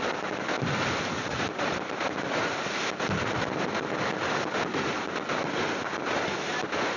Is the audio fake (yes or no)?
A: no